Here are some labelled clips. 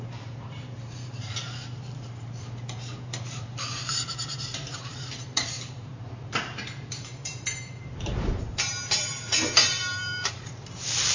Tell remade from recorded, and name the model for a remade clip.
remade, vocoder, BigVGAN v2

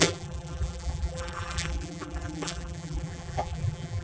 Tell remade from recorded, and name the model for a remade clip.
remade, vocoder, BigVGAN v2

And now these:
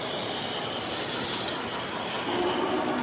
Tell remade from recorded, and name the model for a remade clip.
remade, vocoder, BigVGAN v2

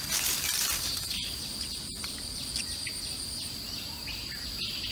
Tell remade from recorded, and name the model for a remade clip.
recorded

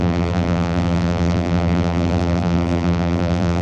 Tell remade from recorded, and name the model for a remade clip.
remade, vocoder, BigVGAN v2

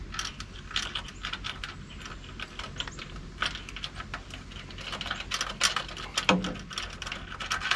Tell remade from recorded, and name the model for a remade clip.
recorded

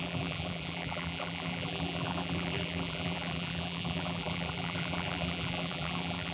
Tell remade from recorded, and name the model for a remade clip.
remade, vocoder, BigVGAN v2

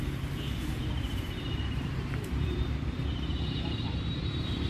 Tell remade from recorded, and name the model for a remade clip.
remade, vocoder, BigVGAN v2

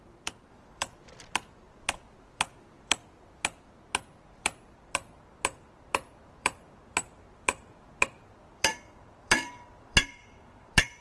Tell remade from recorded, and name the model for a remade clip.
remade, vocoder, BigVGAN v2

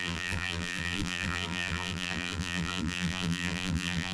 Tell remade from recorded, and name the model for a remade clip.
remade, vocoder, BigVGAN v2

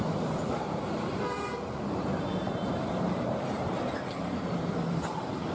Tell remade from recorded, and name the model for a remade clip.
remade, vocoder, BigVGAN v2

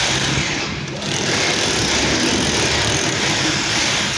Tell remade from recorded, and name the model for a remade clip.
remade, vocoder, BigVGAN v2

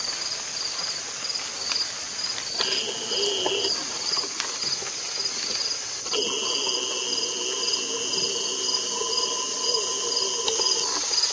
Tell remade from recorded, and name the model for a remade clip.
recorded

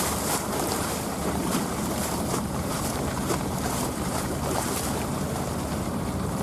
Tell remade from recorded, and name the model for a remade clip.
remade, vocoder, BigVGAN v2